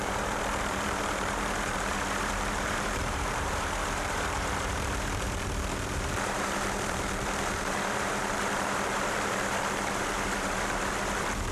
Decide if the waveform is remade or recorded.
remade